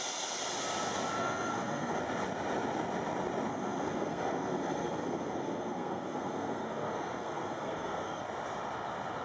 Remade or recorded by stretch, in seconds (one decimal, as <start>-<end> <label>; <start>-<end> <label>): 0.0-1.2 recorded; 1.2-2.0 remade; 2.0-3.5 recorded; 3.5-8.2 remade; 8.2-9.2 recorded